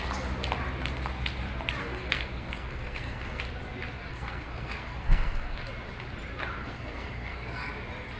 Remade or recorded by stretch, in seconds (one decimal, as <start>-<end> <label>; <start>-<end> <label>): 0.0-1.8 recorded; 1.8-3.4 remade; 3.4-4.1 recorded; 4.1-5.6 remade; 5.6-6.6 recorded; 6.6-7.7 remade; 7.7-8.2 recorded